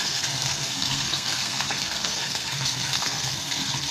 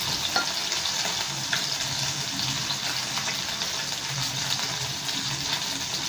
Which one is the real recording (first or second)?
second